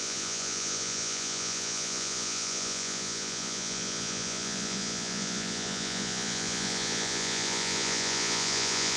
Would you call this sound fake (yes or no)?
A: yes